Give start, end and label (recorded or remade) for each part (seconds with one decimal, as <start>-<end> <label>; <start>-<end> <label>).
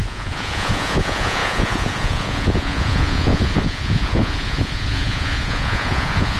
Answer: 0.0-6.4 remade